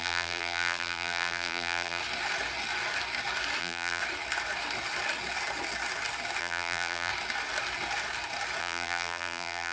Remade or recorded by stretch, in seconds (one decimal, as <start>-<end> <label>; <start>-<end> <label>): 0.0-2.0 remade; 2.0-3.6 recorded; 3.6-4.0 remade; 4.0-6.4 recorded; 6.4-7.1 remade; 7.1-8.6 recorded; 8.6-9.7 remade